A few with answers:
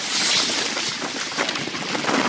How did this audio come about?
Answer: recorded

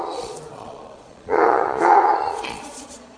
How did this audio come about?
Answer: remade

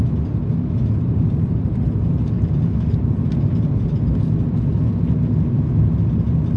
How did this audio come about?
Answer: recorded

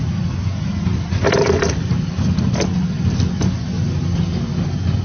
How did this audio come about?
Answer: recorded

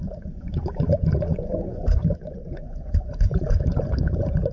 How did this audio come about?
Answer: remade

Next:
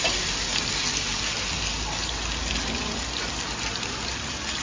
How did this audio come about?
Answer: recorded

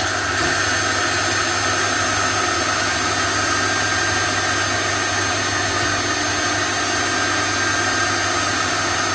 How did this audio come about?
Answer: recorded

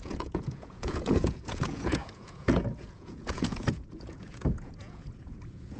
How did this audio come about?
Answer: remade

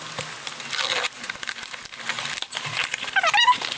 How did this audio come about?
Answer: recorded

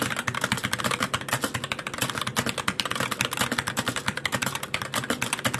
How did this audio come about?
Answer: recorded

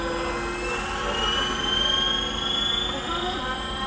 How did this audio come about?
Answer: recorded